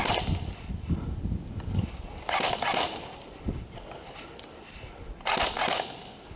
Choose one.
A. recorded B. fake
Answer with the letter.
A